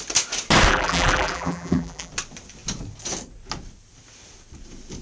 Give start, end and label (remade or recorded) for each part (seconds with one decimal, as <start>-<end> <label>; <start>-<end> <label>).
0.0-0.7 recorded; 0.7-2.1 remade; 2.1-5.0 recorded